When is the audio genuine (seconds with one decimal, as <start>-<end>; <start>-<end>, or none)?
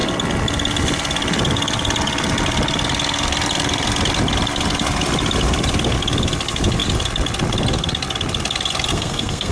0.0-8.9